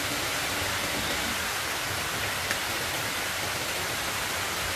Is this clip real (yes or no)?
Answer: yes